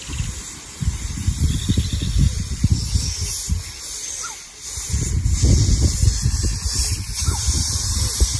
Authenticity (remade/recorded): recorded